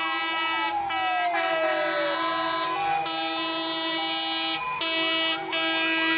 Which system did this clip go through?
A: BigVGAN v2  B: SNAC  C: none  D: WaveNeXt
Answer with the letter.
C